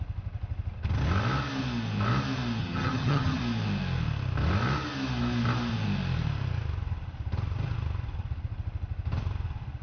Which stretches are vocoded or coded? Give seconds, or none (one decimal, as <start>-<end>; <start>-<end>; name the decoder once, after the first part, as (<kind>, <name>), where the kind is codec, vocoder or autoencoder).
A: 2.6-3.4 (vocoder, HiFi-GAN)